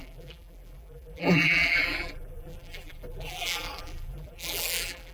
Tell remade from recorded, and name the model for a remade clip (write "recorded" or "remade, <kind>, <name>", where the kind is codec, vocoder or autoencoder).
remade, vocoder, BigVGAN v2